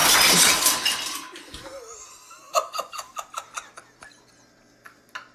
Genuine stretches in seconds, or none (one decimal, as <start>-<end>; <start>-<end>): 0.0-5.3